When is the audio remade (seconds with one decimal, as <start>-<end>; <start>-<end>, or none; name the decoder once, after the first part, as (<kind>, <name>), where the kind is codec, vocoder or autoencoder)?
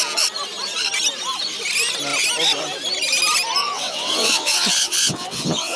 3.6-5.8 (vocoder, WaveNeXt)